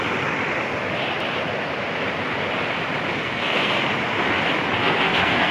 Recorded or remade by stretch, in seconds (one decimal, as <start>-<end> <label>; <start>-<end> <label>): 0.0-3.1 recorded; 3.1-3.7 remade; 3.7-4.8 recorded; 4.8-5.5 remade